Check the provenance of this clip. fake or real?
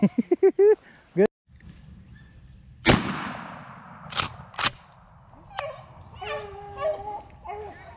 real